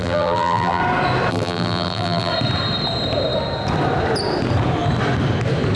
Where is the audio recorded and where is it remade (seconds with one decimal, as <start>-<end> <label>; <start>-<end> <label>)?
0.0-0.8 remade; 0.8-1.3 recorded; 1.3-2.3 remade; 2.3-5.8 recorded